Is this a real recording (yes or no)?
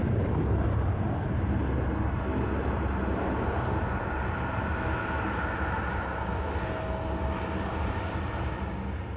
yes